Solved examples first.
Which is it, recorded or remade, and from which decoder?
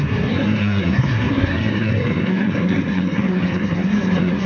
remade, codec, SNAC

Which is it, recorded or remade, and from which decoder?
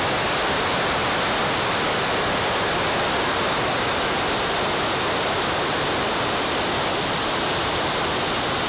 recorded